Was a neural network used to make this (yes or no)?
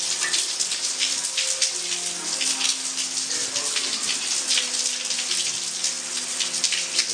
no